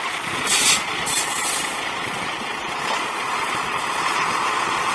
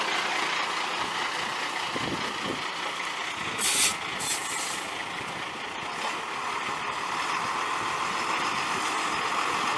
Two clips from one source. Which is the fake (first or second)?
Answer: first